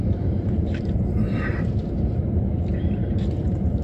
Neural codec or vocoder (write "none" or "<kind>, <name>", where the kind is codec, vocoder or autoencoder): vocoder, BigVGAN v2